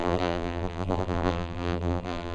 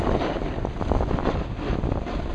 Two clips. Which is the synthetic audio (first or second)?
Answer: first